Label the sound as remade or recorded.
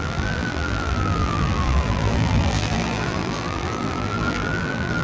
remade